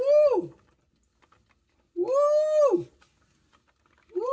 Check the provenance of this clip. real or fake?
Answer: real